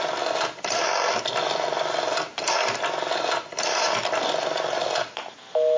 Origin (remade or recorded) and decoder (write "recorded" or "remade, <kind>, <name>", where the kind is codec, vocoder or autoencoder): recorded